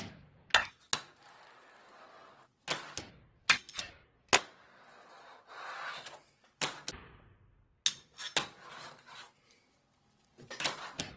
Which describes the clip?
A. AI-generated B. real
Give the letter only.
B